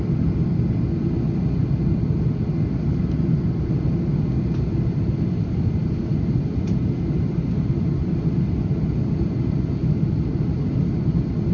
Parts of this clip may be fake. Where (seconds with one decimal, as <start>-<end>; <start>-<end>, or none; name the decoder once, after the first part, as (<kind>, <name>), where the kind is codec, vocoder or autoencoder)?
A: none